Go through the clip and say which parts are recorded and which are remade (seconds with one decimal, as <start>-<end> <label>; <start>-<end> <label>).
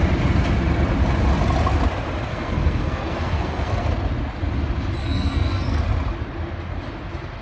0.0-2.3 recorded; 2.3-3.9 remade; 3.9-5.0 recorded; 5.0-5.8 remade; 5.8-7.4 recorded